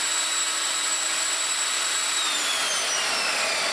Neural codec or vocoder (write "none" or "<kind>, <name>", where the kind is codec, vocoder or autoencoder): vocoder, BigVGAN v2